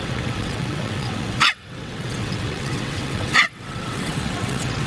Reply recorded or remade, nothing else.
remade